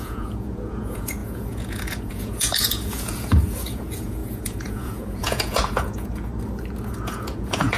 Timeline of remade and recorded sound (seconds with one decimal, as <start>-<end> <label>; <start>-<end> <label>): 0.0-6.3 remade; 6.3-6.9 recorded; 6.9-7.8 remade